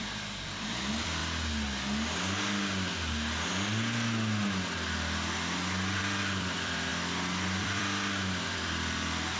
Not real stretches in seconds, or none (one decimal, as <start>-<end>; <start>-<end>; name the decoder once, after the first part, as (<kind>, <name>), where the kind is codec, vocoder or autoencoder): 0.0-1.2 (vocoder, BigVGAN v2); 6.0-6.9; 7.6-9.4